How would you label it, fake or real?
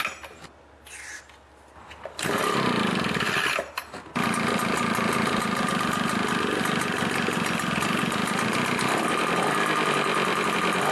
real